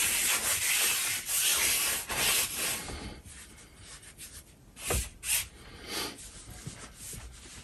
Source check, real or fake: real